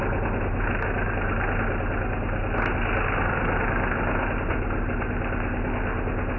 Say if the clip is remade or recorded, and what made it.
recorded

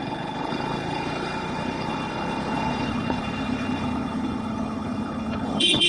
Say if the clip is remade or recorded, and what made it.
remade, codec, HILCodec